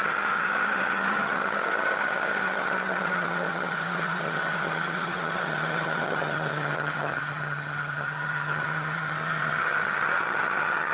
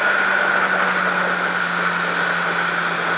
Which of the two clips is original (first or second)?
second